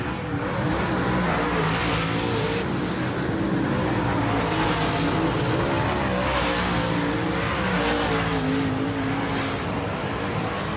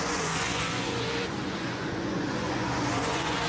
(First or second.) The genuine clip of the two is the first